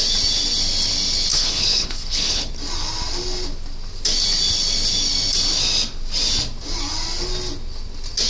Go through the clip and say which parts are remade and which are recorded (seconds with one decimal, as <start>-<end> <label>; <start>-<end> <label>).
0.0-1.3 recorded; 1.3-2.5 remade; 2.5-8.3 recorded